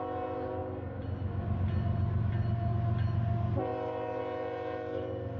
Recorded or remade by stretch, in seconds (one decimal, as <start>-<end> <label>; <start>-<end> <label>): 0.0-5.4 recorded